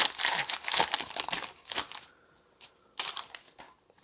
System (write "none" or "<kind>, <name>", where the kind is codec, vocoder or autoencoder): none